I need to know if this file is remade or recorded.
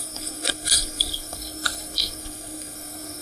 remade